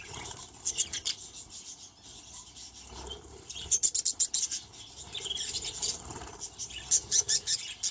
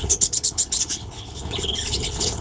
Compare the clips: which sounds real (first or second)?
first